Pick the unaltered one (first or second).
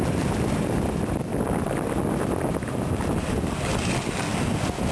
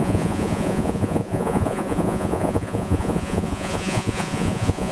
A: first